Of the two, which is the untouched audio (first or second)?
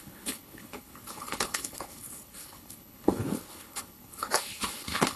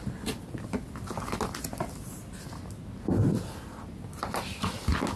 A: second